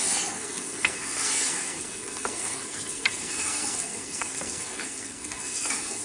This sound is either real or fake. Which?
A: fake